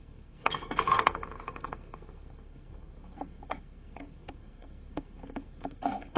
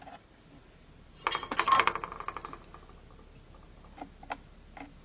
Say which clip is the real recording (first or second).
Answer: second